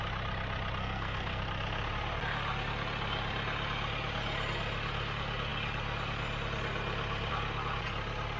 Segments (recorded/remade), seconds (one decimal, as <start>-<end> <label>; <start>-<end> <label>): 0.0-0.8 recorded; 0.8-1.4 remade; 1.4-8.4 recorded